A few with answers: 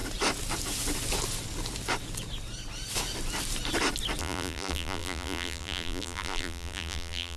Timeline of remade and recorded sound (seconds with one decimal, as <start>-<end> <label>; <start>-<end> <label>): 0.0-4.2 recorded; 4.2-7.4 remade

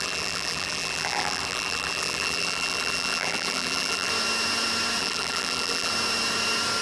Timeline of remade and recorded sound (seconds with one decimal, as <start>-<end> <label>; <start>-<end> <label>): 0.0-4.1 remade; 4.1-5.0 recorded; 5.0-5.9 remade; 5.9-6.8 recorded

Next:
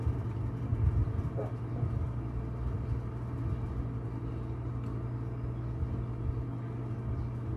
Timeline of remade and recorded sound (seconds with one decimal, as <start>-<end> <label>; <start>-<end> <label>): 0.0-7.6 recorded